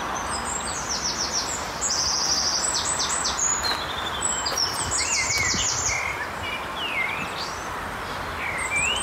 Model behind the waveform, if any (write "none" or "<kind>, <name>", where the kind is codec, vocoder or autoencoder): none